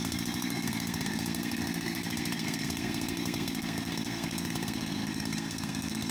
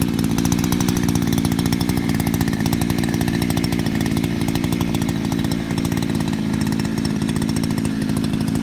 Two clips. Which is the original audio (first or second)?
second